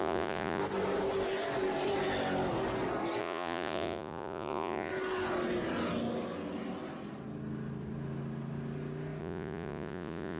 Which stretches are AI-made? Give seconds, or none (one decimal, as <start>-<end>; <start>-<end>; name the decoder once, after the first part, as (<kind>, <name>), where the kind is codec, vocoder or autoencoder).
0.0-0.6 (vocoder, Vocos); 3.2-4.9; 9.2-10.4